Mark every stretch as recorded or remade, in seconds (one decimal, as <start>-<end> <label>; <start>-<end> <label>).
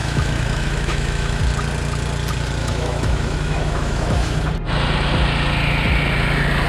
0.0-1.4 remade; 1.4-2.6 recorded; 2.6-4.5 remade; 4.5-6.7 recorded